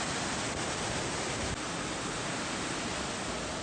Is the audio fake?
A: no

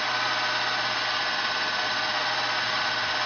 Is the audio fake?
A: no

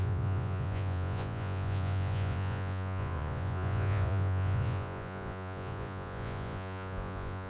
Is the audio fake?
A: yes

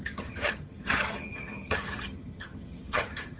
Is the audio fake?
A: yes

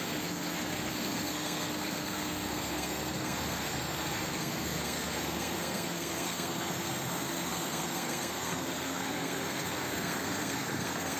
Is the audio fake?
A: yes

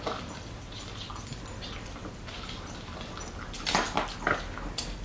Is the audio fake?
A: no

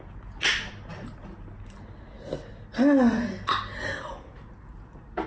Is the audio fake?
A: no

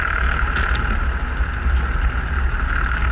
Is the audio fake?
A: no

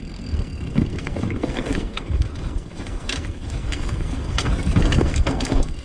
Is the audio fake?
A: yes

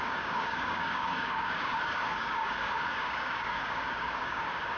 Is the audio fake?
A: yes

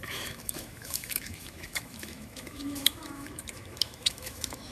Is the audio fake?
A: yes